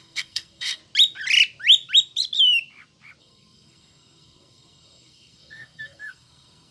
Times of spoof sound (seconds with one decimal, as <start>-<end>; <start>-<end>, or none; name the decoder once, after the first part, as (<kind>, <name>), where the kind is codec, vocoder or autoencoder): 0.0-0.8 (codec, SNAC); 3.2-6.7